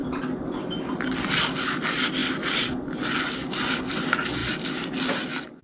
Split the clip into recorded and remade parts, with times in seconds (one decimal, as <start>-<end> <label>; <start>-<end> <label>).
0.0-5.6 recorded